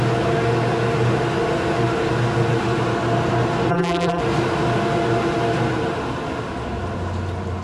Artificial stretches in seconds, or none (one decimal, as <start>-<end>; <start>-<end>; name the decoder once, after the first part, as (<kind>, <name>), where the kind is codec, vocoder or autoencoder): 3.7-4.2 (vocoder, BigVGAN v2)